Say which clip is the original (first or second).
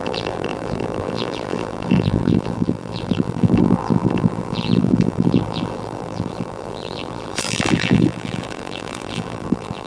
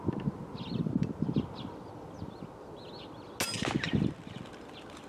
second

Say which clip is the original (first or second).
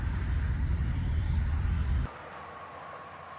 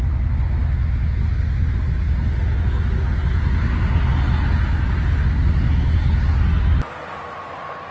second